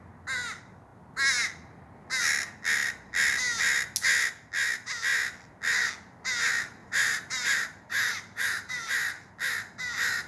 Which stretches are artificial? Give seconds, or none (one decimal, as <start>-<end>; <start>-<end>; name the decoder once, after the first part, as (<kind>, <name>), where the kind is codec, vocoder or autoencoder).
6.8-8.9 (vocoder, BigVGAN v2)